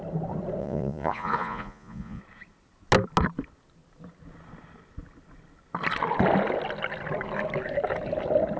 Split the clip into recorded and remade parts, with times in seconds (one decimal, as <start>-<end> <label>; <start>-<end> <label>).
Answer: 0.0-0.6 recorded; 0.6-2.2 remade; 2.2-8.6 recorded